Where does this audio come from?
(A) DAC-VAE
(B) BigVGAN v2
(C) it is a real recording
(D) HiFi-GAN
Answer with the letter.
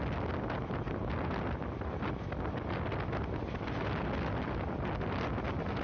C